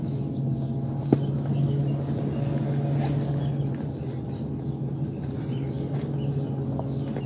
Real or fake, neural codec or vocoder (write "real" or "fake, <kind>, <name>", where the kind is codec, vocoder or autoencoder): real